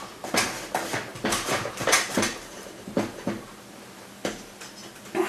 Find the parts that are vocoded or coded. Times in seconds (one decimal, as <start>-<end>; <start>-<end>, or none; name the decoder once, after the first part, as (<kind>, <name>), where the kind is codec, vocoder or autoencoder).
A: 1.1-4.3 (vocoder, BigVGAN v2)